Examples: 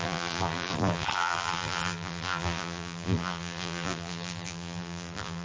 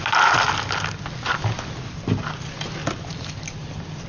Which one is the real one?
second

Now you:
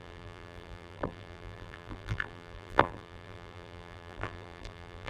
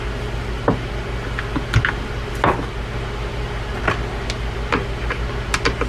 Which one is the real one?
second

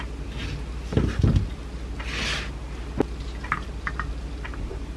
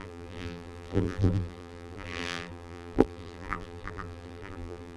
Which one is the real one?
first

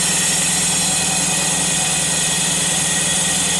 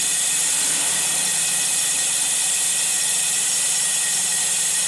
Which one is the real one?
first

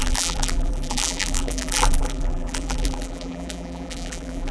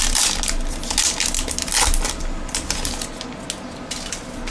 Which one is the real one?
second